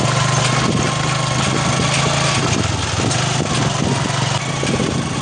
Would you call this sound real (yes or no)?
yes